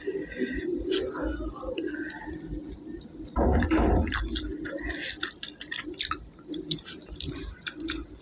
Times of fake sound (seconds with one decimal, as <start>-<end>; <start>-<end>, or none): 0.0-0.7; 2.2-8.2